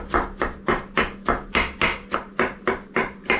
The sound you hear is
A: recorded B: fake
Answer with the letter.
A